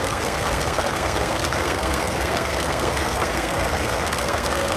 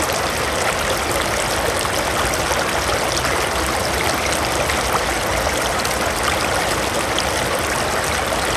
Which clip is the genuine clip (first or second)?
second